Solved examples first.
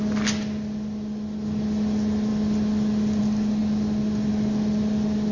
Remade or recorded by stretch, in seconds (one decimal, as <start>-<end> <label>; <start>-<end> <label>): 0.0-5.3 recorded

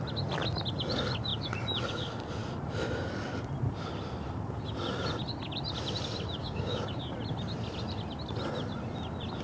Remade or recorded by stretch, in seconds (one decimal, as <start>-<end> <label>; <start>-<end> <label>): 0.0-6.4 recorded; 6.4-7.0 remade; 7.0-9.4 recorded

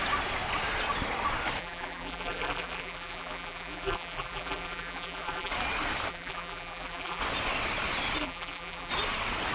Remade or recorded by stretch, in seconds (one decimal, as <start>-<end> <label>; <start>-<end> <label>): 0.0-1.6 recorded; 1.6-5.5 remade; 5.5-6.1 recorded; 6.1-7.2 remade; 7.2-8.2 recorded; 8.2-8.9 remade; 8.9-9.5 recorded

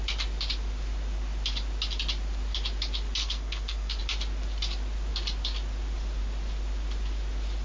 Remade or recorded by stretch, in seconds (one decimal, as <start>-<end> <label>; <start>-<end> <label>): 0.0-3.2 recorded; 3.2-4.0 remade; 4.0-7.6 recorded